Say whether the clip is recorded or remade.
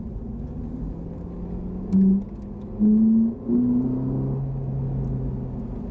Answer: recorded